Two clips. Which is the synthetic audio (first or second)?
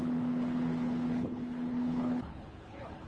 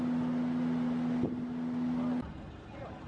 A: first